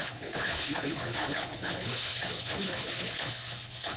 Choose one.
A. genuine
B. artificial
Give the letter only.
B